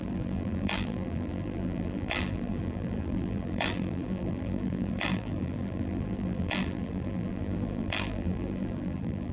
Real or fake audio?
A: fake